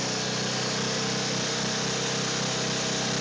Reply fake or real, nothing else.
real